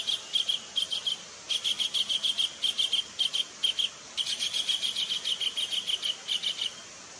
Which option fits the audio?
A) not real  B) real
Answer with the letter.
B